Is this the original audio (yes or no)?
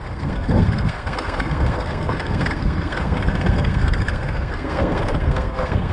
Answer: no